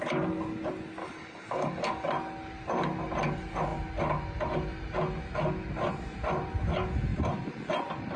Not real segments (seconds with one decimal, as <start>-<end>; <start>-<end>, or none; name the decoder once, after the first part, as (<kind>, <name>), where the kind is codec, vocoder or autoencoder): 1.0-2.1 (codec, DAC)